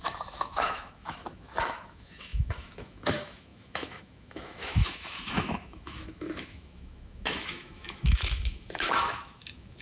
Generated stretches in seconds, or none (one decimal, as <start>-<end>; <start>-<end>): 0.0-9.8